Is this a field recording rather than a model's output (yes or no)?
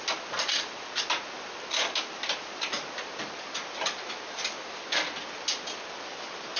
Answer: yes